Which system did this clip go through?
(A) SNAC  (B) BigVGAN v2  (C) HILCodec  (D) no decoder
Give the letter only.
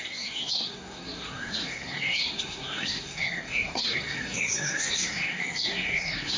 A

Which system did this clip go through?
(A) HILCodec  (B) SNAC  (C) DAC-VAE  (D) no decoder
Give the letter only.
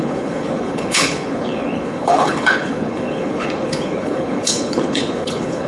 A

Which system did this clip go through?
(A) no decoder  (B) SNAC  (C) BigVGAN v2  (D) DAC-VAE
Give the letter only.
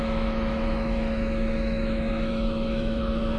D